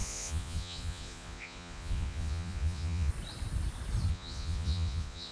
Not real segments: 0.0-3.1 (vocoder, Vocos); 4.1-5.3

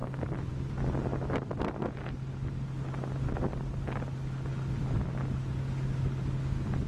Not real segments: none

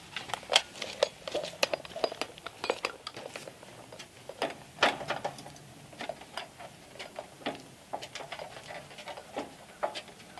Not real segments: none